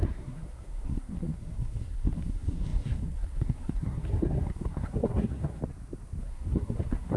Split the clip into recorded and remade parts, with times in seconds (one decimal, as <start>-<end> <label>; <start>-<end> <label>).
0.0-5.6 remade; 5.6-6.2 recorded; 6.2-7.2 remade